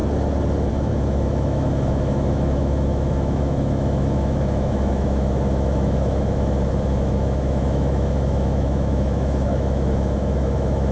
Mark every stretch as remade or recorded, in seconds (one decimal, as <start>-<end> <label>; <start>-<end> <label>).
0.0-0.7 recorded; 0.7-10.9 remade